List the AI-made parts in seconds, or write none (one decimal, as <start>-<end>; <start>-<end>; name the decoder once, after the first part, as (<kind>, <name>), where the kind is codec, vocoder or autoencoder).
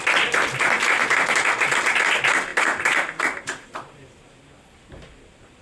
2.5-3.7 (vocoder, BigVGAN v2)